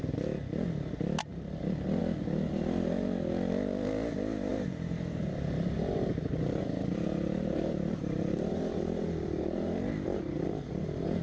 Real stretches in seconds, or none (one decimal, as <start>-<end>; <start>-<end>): 0.0-4.5; 8.8-11.2